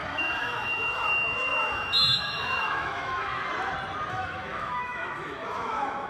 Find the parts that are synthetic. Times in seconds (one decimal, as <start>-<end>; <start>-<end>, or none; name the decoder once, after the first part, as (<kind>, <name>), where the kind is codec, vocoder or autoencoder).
0.0-3.3 (autoencoder, DAC-VAE); 4.1-6.1